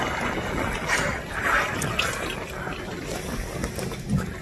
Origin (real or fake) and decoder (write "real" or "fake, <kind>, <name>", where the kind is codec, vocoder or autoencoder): real